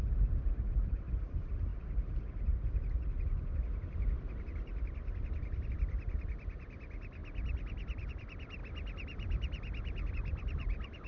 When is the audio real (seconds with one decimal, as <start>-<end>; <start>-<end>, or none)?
1.7-5.7; 7.2-8.1; 8.6-10.1